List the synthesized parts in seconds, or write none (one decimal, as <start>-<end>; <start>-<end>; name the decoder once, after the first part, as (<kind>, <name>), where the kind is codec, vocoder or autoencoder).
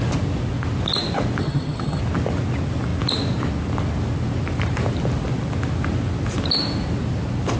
1.4-2.0 (vocoder, HiFi-GAN)